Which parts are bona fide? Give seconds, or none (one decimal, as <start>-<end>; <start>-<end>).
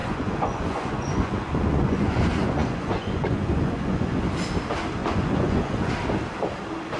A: 4.2-5.0; 5.9-7.0